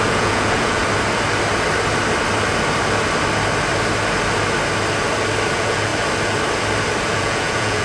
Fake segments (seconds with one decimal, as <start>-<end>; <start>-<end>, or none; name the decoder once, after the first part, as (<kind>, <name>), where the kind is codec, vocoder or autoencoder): 0.0-0.8 (vocoder, Vocos); 5.5-5.9; 7.1-7.8